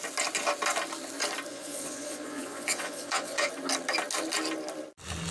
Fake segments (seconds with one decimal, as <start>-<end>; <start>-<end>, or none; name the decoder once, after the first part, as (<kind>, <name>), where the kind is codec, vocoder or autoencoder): 1.5-3.5 (vocoder, Vocos)